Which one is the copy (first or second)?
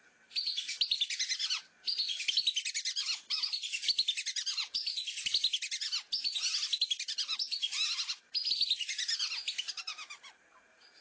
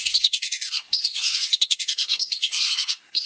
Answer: second